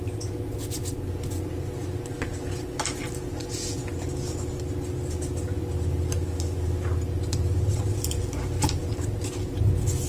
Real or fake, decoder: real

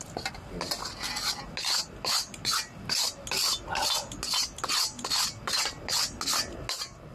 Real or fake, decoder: real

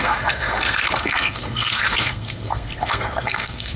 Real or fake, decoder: fake, codec, SNAC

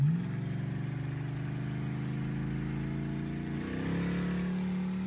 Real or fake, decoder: real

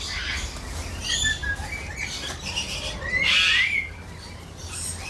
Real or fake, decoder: real